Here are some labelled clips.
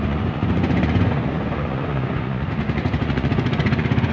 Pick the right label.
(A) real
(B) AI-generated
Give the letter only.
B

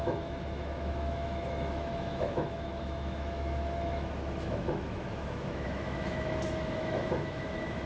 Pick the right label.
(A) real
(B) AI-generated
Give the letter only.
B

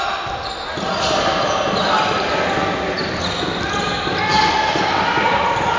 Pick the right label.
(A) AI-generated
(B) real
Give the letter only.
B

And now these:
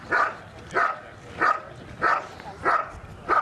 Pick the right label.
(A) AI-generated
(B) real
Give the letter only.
B